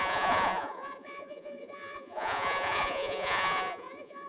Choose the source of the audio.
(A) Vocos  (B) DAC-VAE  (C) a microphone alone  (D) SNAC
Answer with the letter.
A